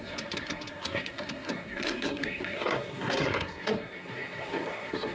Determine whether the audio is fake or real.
fake